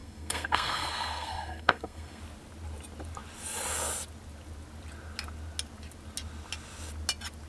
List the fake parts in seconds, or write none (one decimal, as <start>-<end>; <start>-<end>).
0.0-2.2